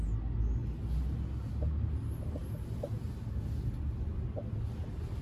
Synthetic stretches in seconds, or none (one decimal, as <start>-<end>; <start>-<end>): none